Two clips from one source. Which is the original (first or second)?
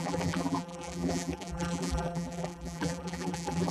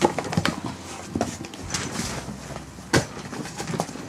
second